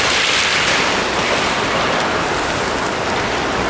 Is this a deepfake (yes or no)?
no